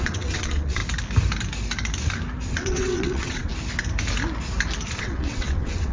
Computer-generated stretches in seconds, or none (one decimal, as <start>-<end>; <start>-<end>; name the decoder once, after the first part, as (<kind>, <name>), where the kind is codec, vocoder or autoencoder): 0.0-0.8 (vocoder, WaveNeXt); 2.5-3.5; 5.0-5.9